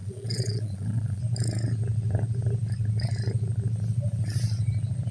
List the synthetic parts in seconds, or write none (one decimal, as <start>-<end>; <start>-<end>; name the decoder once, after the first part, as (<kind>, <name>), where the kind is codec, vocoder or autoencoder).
0.0-1.2 (vocoder, Vocos)